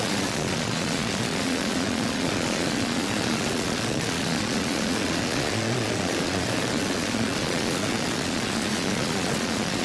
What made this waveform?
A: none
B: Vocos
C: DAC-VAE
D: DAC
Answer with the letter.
B